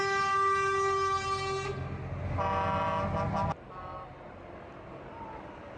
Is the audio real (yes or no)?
yes